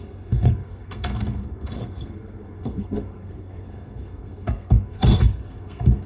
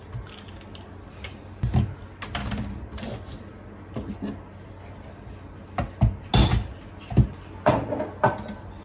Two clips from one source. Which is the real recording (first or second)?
second